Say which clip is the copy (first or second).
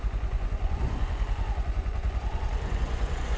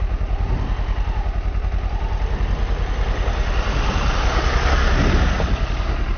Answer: first